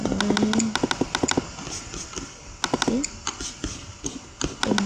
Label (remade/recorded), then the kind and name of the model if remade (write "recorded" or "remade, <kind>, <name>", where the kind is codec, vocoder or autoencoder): recorded